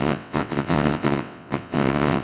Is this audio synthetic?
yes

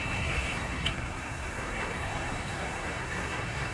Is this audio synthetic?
yes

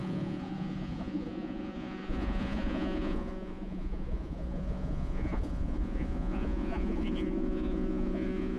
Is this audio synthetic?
yes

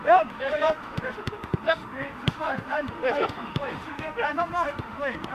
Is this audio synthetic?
yes